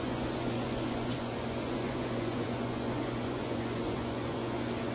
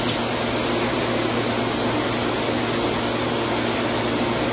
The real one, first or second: second